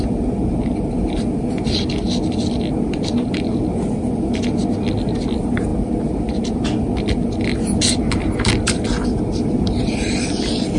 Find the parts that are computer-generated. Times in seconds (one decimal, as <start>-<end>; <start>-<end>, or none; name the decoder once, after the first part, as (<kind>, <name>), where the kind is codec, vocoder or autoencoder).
none